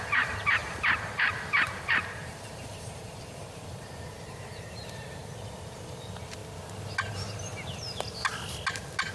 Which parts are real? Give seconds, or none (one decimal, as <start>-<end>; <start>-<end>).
6.4-7.1; 7.5-9.1